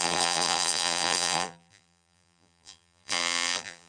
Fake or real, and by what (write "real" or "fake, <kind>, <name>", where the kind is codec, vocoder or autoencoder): fake, vocoder, BigVGAN v2